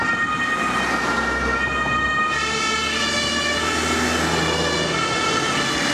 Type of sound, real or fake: real